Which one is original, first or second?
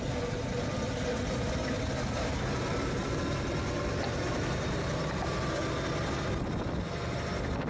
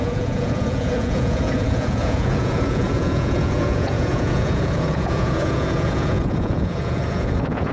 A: first